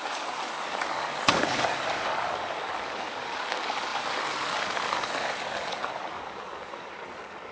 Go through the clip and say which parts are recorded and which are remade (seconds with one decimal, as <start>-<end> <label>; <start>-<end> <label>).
0.0-7.5 remade